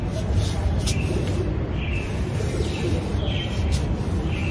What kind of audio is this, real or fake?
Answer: fake